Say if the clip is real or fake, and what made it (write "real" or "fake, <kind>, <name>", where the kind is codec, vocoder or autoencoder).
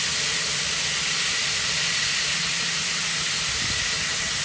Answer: real